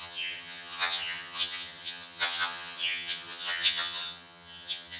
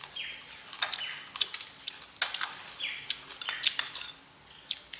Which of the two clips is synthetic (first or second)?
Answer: first